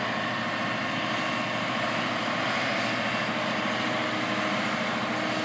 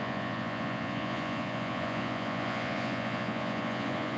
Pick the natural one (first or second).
first